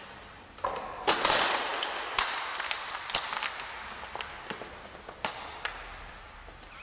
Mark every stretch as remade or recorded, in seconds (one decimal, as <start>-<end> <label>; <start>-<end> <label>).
0.0-6.8 recorded